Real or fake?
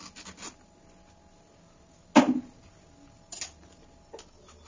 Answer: real